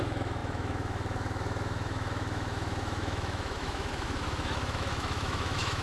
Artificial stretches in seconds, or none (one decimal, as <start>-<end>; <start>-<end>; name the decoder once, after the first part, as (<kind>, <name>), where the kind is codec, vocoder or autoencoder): 0.0-5.8 (autoencoder, DAC-VAE)